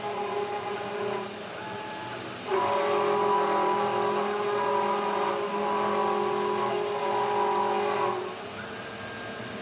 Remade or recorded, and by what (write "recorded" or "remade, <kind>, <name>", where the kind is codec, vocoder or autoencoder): recorded